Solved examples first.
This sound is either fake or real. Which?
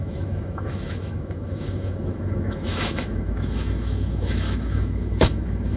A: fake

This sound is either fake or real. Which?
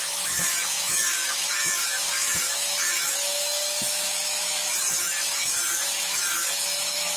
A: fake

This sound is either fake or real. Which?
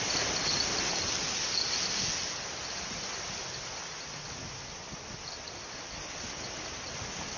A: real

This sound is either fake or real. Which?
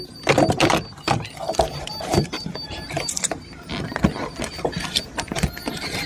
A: real